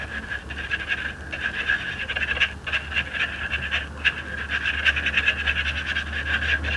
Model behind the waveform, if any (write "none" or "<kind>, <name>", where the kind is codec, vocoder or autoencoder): none